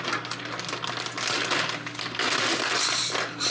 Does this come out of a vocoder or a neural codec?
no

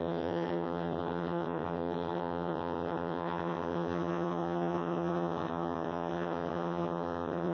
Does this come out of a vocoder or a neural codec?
yes